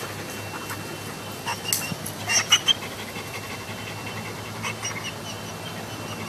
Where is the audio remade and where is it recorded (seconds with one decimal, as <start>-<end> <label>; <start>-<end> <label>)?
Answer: 0.0-6.3 recorded